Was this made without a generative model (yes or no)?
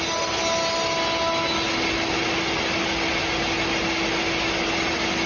yes